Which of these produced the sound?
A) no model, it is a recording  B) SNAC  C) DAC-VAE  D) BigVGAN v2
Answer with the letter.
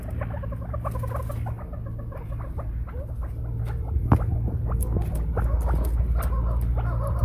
A